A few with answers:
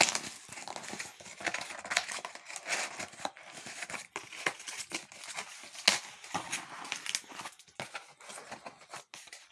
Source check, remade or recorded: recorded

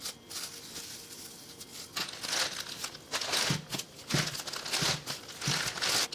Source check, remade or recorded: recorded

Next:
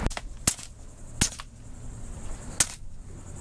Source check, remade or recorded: recorded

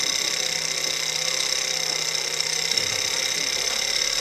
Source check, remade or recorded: recorded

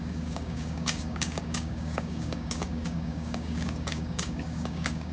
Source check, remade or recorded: remade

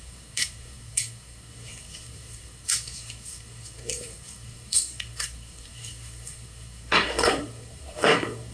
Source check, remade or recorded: remade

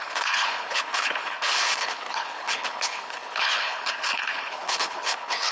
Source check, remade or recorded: remade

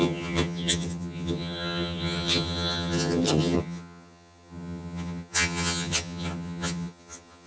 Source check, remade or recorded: remade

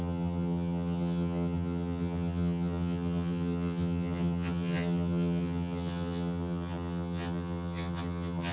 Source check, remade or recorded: remade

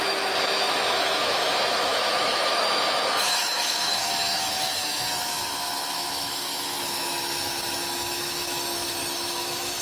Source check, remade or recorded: remade